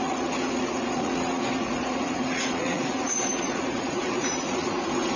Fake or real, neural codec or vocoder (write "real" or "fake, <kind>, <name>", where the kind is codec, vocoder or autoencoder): fake, vocoder, Vocos